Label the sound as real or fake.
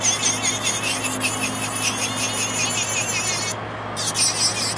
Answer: real